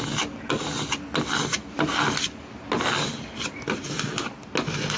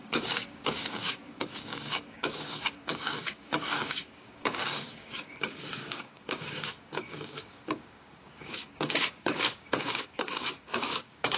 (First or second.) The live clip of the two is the first